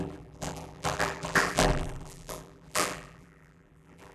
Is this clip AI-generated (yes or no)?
yes